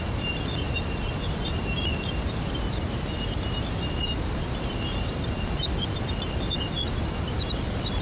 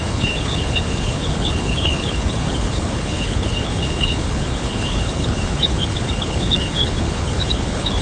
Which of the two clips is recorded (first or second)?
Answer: first